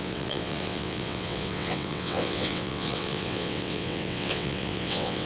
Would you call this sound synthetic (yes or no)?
yes